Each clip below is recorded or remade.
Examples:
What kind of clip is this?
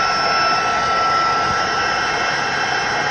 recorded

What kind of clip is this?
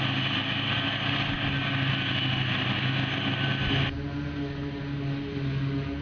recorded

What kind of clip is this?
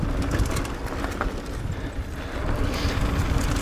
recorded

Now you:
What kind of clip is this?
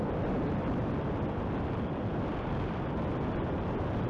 recorded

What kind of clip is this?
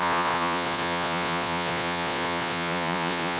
remade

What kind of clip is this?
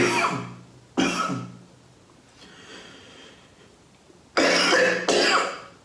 recorded